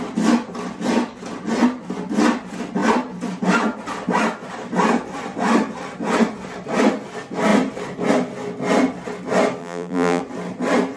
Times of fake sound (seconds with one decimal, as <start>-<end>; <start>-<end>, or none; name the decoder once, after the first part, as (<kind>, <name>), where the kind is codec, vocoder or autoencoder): 9.6-10.2 (vocoder, BigVGAN v2)